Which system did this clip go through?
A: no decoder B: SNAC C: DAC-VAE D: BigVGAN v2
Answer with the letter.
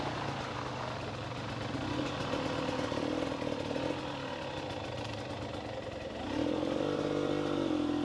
A